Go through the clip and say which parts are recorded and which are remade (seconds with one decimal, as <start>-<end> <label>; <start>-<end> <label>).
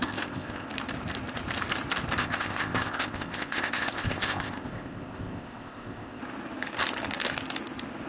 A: 0.0-0.7 remade; 0.7-2.2 recorded; 2.2-6.2 remade; 6.2-8.1 recorded